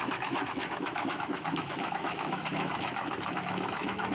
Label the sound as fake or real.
fake